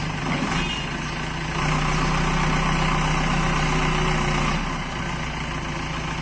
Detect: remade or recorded recorded